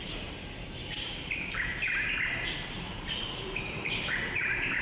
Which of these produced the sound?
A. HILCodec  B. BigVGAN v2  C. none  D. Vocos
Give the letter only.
B